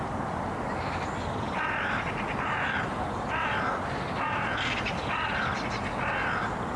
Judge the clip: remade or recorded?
recorded